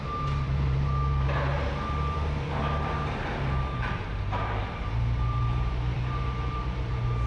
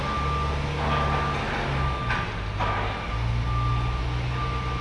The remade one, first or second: first